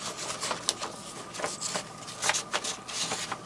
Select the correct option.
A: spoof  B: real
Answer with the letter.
B